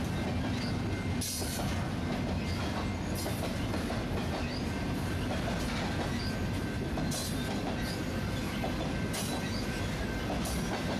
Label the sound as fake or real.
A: real